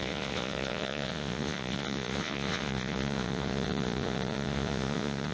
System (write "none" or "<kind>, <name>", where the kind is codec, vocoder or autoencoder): vocoder, Vocos